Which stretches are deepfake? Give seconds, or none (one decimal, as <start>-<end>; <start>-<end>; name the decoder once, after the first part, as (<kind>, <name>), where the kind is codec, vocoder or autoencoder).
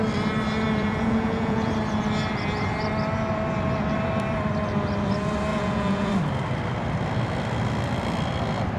0.8-1.7 (vocoder, Vocos); 5.5-6.1